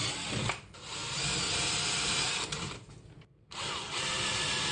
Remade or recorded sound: recorded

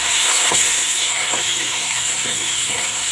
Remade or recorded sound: remade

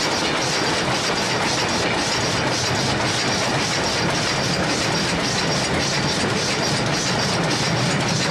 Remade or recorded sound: recorded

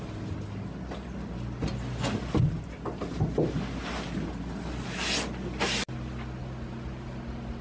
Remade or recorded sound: recorded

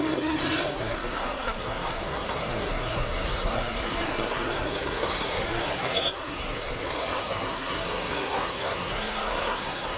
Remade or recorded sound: remade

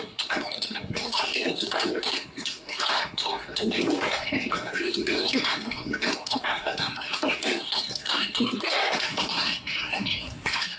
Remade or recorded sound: remade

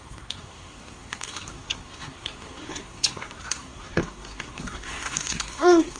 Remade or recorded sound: remade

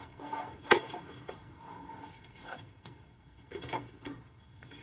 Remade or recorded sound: remade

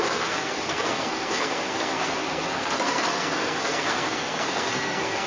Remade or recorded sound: remade